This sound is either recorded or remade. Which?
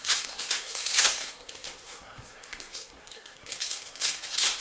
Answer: remade